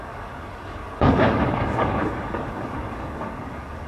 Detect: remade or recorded remade